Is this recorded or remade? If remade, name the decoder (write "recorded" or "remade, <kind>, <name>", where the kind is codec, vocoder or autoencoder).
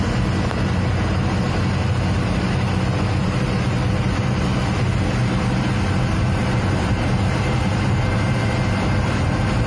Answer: recorded